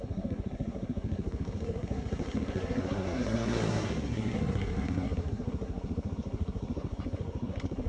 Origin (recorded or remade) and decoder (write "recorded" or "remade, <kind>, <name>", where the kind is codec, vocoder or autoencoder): remade, codec, SNAC